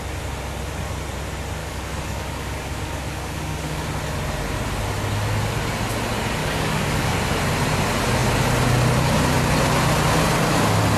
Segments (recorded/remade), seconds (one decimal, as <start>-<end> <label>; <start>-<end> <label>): 0.0-1.6 recorded; 1.6-4.0 remade; 4.0-6.4 recorded; 6.4-7.1 remade; 7.1-11.0 recorded